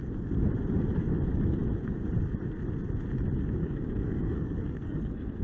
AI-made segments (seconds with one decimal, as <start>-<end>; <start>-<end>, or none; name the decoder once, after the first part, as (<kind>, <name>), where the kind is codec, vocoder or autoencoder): 3.6-5.4 (codec, SNAC)